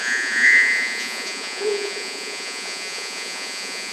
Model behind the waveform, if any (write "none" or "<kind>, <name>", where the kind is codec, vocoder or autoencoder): vocoder, Vocos